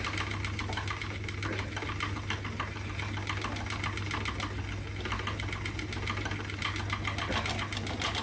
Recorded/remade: recorded